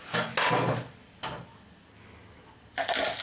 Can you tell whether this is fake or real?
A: real